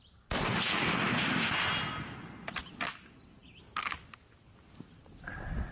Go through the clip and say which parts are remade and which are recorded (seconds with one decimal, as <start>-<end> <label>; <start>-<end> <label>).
0.0-1.0 recorded; 1.0-1.5 remade; 1.5-5.7 recorded